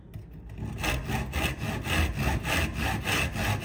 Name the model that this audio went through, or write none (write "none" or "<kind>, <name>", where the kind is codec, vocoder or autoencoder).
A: none